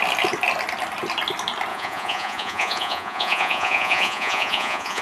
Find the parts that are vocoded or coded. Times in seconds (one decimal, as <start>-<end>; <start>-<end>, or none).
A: 1.7-5.0